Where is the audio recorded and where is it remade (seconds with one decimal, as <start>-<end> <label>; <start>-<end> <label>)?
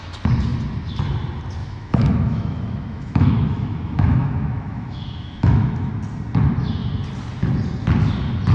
0.0-1.6 recorded; 1.6-5.9 remade; 5.9-8.5 recorded